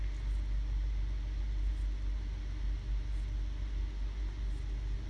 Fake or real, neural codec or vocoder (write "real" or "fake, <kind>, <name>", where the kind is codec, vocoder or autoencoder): real